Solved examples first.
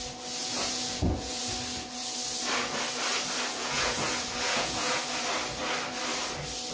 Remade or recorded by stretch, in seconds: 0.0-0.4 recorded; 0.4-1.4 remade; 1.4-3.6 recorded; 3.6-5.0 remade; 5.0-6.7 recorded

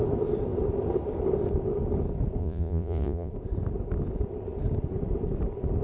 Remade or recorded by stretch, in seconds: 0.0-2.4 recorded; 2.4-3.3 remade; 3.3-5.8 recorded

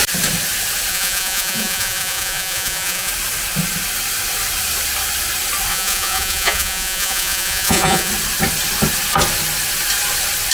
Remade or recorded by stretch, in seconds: 0.0-0.9 recorded; 0.9-3.1 remade; 3.1-5.7 recorded; 5.7-8.1 remade; 8.1-10.5 recorded

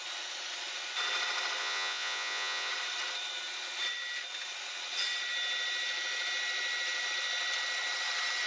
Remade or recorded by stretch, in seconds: 0.0-1.6 recorded; 1.6-2.7 remade; 2.7-8.5 recorded

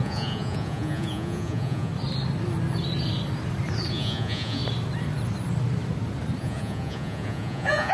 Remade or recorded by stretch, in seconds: 0.0-1.9 remade; 1.9-3.9 recorded; 3.9-4.6 remade; 4.6-6.4 recorded; 6.4-7.9 remade